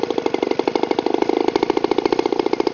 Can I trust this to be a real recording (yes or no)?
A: yes